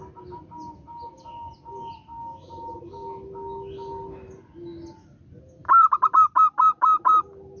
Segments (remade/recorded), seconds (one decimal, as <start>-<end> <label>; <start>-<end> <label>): 0.0-7.6 recorded